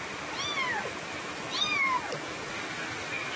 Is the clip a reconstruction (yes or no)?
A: no